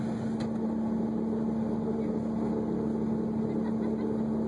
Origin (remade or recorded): recorded